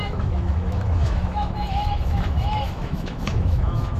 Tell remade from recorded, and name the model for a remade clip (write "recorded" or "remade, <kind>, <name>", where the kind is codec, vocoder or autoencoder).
remade, autoencoder, DAC-VAE